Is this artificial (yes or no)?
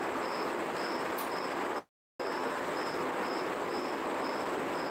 no